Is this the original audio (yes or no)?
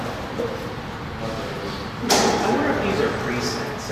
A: yes